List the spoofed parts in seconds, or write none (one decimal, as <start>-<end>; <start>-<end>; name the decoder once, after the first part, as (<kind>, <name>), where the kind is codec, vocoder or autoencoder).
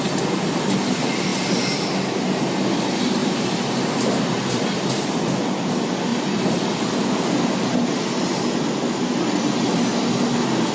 3.2-5.2 (vocoder, BigVGAN v2)